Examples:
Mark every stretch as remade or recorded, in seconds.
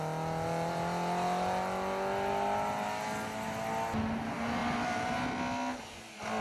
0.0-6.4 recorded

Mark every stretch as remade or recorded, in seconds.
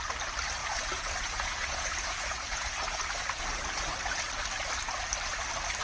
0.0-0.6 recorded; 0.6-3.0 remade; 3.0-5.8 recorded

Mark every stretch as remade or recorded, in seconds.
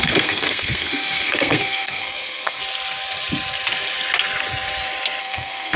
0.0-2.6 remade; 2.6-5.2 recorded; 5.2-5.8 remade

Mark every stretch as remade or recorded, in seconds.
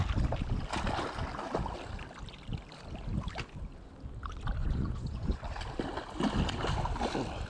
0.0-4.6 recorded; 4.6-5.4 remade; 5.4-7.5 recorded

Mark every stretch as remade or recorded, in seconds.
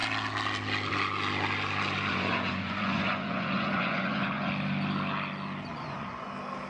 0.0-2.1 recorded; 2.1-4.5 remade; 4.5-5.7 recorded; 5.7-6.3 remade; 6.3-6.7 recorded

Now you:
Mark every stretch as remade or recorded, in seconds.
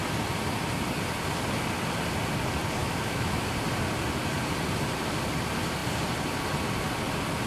0.0-2.8 recorded; 2.8-3.5 remade; 3.5-7.5 recorded